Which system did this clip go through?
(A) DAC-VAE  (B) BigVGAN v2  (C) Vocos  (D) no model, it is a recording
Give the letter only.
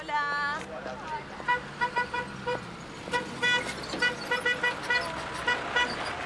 D